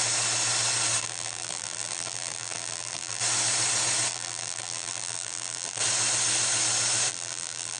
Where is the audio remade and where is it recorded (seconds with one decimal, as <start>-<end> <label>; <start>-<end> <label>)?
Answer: 0.0-1.0 recorded; 1.0-3.2 remade; 3.2-4.1 recorded; 4.1-5.8 remade; 5.8-7.1 recorded; 7.1-7.8 remade